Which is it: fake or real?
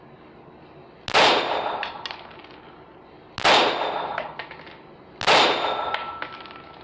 real